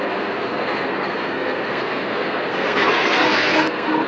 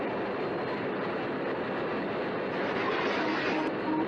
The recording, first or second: second